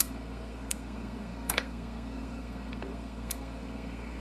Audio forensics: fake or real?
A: fake